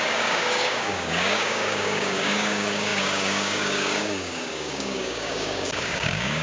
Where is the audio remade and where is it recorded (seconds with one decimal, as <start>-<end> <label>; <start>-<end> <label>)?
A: 0.0-6.4 remade

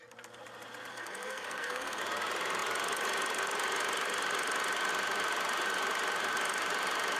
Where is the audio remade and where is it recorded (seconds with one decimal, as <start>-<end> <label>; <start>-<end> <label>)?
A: 0.0-0.9 recorded; 0.9-2.0 remade; 2.0-7.2 recorded

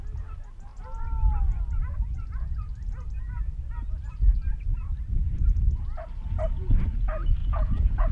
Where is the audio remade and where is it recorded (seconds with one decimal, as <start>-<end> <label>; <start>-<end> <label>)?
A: 0.0-7.4 recorded; 7.4-8.1 remade